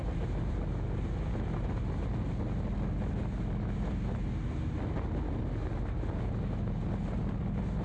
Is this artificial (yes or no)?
no